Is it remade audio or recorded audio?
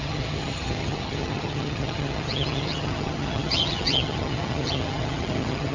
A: remade